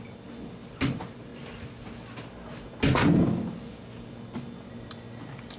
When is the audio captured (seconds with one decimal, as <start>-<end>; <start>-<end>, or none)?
0.0-5.6